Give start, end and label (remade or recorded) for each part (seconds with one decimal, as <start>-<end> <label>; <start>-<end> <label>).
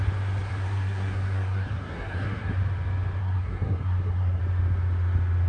0.0-0.5 recorded; 0.5-2.5 remade; 2.5-3.2 recorded; 3.2-4.4 remade; 4.4-5.5 recorded